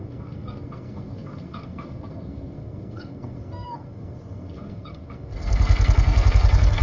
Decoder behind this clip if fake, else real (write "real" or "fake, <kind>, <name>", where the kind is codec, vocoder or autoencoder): fake, codec, SNAC